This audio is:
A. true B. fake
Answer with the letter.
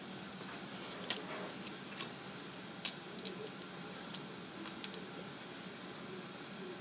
A